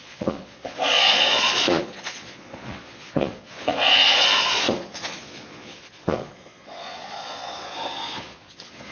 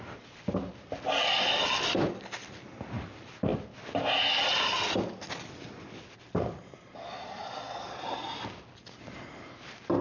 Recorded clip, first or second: second